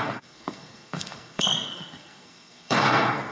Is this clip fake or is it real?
fake